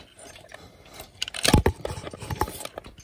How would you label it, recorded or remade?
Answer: recorded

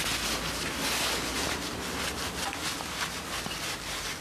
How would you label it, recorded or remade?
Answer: recorded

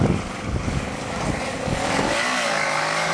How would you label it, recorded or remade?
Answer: remade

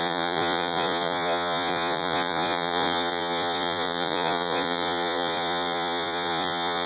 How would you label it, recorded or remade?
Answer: remade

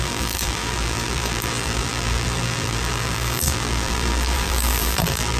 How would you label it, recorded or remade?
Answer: remade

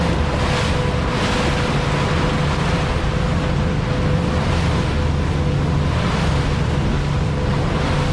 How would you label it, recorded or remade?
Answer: recorded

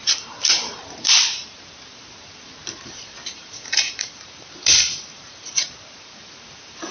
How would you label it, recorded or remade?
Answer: remade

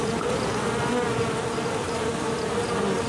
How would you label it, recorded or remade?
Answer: recorded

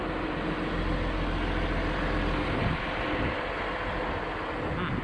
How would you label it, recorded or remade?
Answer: recorded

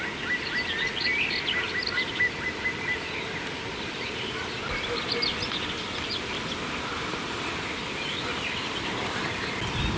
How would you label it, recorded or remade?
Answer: recorded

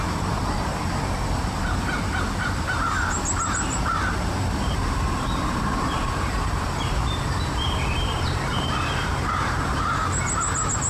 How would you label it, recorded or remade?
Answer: remade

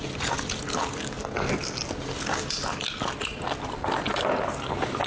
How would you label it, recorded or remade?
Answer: recorded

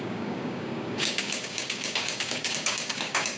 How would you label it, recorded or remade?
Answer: remade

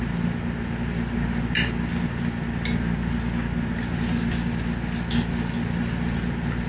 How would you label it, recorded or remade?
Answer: recorded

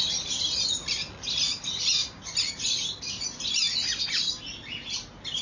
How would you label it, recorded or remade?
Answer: recorded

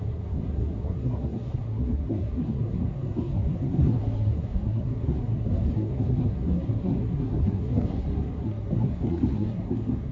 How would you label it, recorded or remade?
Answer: remade